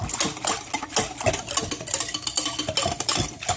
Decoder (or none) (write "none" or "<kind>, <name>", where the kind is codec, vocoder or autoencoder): none